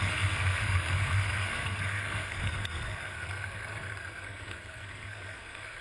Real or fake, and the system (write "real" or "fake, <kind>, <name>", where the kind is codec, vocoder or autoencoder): fake, codec, SNAC